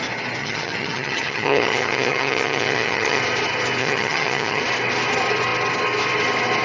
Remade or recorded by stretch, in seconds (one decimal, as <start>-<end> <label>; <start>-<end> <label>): 0.0-0.4 recorded; 0.4-3.2 remade; 3.2-3.8 recorded; 3.8-4.6 remade; 4.6-6.6 recorded